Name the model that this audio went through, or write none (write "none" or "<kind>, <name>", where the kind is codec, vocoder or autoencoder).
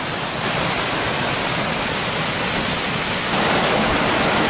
none